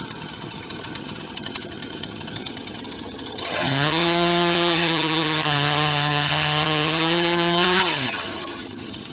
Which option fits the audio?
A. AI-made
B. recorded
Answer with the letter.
A